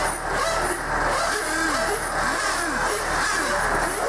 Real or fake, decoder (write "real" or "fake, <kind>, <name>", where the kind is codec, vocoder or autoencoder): real